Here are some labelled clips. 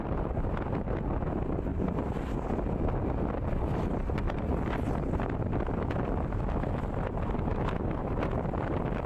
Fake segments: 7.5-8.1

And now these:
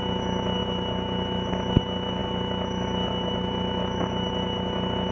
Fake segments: 0.0-5.1